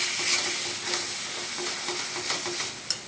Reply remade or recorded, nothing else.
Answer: recorded